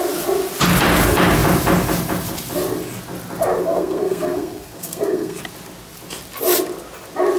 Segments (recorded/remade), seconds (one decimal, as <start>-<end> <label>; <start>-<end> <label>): 0.0-3.6 recorded; 3.6-5.4 remade; 5.4-7.4 recorded